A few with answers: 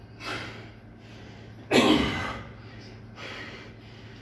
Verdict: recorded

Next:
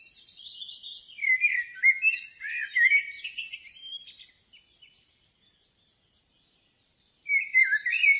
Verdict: recorded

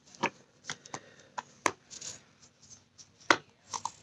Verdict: recorded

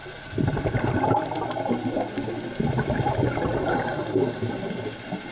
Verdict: recorded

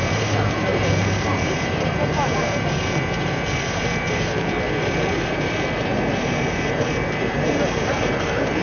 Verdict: remade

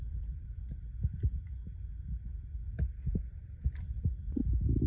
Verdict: recorded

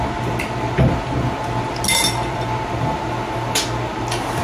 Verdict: recorded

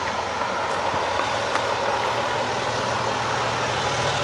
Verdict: recorded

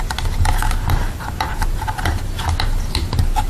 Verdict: recorded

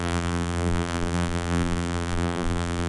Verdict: remade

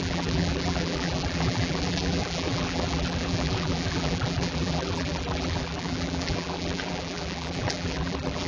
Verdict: remade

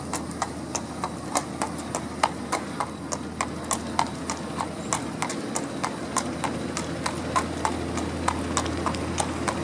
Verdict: recorded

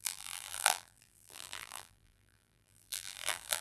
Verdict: remade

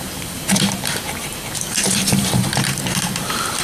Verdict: remade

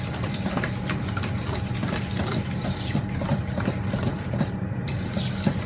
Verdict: remade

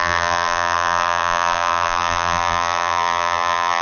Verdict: remade